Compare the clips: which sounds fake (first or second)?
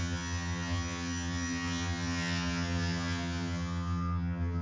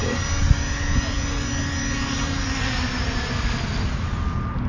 first